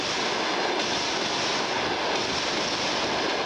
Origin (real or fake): real